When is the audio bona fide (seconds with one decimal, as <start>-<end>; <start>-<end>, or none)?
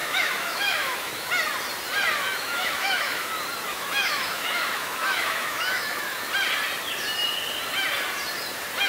1.3-2.3; 3.3-3.7; 6.3-8.9